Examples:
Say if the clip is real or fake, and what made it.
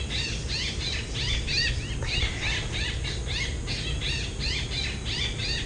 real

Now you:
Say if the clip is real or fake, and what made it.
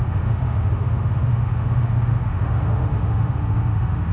fake, autoencoder, DAC-VAE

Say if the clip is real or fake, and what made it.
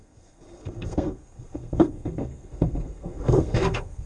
fake, codec, SNAC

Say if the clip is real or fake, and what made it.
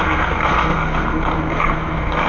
fake, codec, SNAC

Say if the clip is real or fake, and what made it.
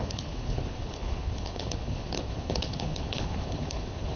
fake, codec, HILCodec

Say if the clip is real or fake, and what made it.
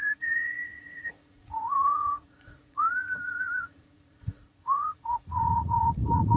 fake, vocoder, Vocos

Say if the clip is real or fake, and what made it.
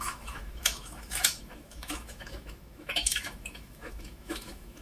fake, autoencoder, DAC-VAE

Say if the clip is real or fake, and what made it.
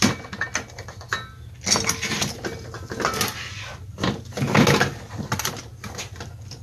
real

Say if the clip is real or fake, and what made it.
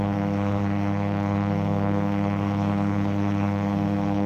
fake, codec, SNAC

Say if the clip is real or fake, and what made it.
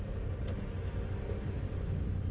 real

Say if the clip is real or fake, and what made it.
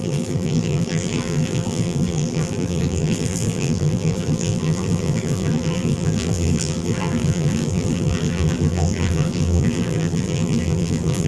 fake, vocoder, BigVGAN v2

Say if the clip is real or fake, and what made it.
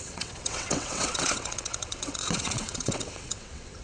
fake, vocoder, WaveNeXt